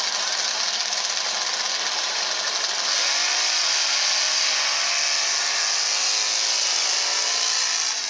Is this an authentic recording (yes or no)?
yes